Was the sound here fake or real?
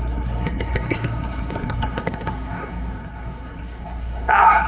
fake